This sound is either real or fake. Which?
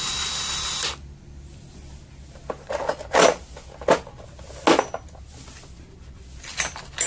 real